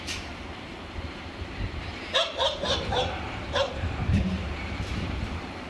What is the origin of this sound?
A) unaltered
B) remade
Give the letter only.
B